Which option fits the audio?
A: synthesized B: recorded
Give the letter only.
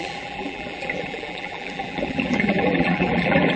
A